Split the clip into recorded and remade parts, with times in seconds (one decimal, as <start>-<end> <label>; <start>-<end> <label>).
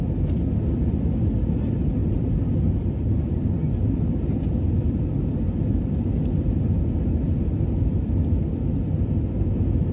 0.0-2.0 recorded; 2.0-2.9 remade; 2.9-9.9 recorded